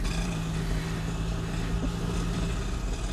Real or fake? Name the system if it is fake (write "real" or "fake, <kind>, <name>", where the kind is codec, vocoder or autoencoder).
real